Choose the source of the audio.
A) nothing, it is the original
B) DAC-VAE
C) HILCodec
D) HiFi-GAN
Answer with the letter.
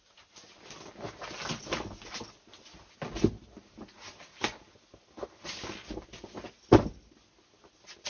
A